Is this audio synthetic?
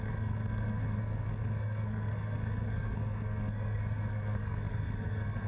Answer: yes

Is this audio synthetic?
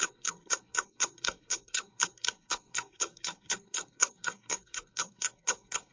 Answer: yes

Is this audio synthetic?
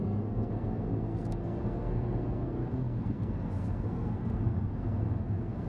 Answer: yes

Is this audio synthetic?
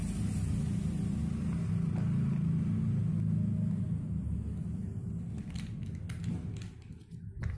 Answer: no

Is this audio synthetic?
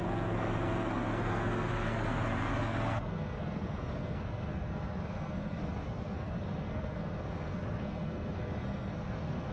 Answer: yes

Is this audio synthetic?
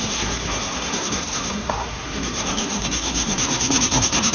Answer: yes